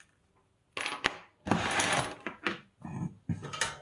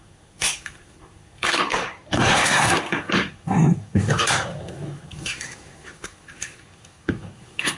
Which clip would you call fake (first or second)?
second